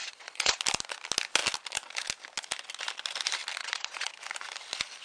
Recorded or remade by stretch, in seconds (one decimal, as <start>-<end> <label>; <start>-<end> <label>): 0.0-0.6 remade; 0.6-3.6 recorded; 3.6-4.1 remade; 4.1-5.0 recorded

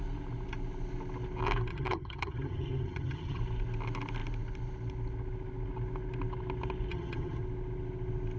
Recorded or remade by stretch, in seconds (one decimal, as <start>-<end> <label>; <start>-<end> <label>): 0.0-1.7 recorded; 1.7-3.4 remade; 3.4-6.9 recorded; 6.9-7.4 remade; 7.4-8.4 recorded

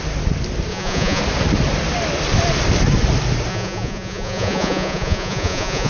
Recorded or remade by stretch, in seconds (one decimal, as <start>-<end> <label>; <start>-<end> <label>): 0.0-0.7 recorded; 0.7-1.2 remade; 1.2-3.5 recorded; 3.5-5.9 remade

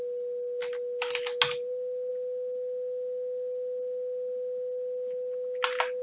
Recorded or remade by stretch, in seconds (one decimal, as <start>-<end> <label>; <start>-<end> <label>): 0.0-6.0 recorded

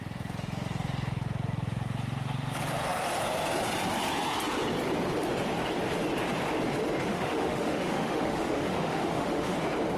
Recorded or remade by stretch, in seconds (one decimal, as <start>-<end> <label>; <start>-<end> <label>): 0.0-7.1 recorded; 7.1-9.6 remade; 9.6-10.0 recorded

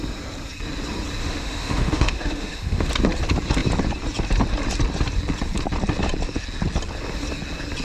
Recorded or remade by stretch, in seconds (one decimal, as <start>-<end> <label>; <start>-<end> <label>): 0.0-1.2 recorded; 1.2-2.9 remade; 2.9-7.8 recorded

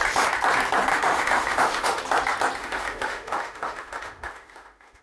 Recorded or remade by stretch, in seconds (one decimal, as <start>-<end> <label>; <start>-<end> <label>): 0.0-0.9 recorded; 0.9-2.0 remade; 2.0-2.6 recorded; 2.6-5.0 remade